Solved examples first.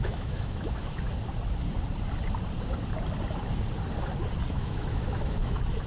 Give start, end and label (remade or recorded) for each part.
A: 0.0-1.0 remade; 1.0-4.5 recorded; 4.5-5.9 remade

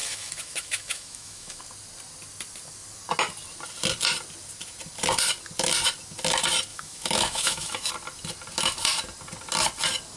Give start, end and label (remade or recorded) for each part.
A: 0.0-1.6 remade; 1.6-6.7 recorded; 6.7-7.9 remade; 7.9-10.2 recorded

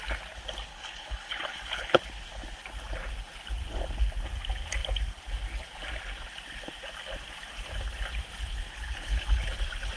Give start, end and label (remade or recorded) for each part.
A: 0.0-0.7 recorded; 0.7-2.0 remade; 2.0-8.7 recorded; 8.7-9.4 remade; 9.4-10.0 recorded

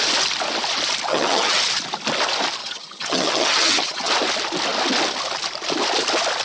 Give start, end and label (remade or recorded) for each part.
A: 0.0-1.1 recorded; 1.1-1.6 remade; 1.6-2.6 recorded; 2.6-4.1 remade; 4.1-6.4 recorded

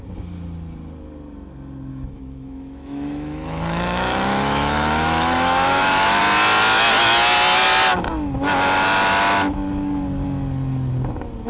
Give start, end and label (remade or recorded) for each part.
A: 0.0-1.9 recorded; 1.9-6.2 remade; 6.2-11.5 recorded

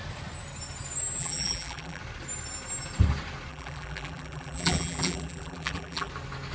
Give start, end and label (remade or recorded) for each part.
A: 0.0-1.2 recorded; 1.2-2.0 remade; 2.0-3.5 recorded; 3.5-6.1 remade; 6.1-6.5 recorded

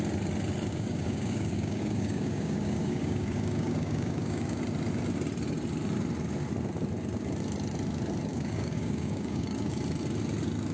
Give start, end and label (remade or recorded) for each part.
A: 0.0-0.7 recorded; 0.7-4.6 remade; 4.6-8.3 recorded; 8.3-9.8 remade; 9.8-10.7 recorded